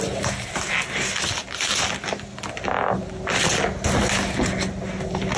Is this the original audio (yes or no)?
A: yes